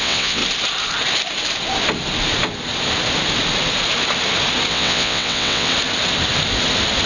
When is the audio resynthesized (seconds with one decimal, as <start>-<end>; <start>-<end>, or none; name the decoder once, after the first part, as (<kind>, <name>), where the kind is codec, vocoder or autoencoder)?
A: 0.0-0.4 (vocoder, WaveNeXt); 4.7-5.7